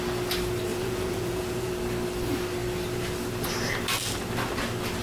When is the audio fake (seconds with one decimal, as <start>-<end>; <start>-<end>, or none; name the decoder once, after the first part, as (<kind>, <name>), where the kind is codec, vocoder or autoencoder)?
0.7-1.7 (vocoder, Vocos)